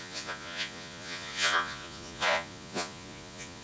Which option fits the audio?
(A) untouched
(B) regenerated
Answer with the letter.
B